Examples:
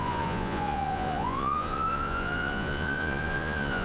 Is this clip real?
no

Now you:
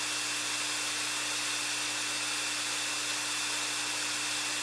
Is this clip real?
yes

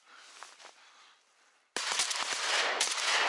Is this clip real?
yes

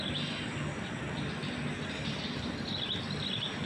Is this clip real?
yes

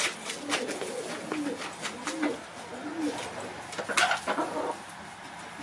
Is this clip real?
yes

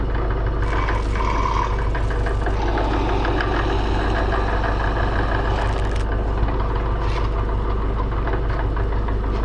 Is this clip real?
yes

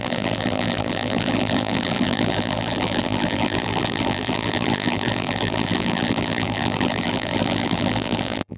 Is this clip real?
no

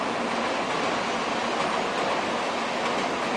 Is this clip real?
yes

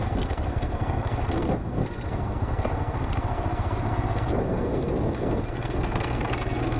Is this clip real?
no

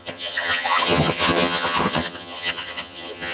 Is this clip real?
no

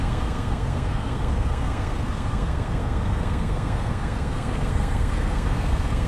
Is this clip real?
no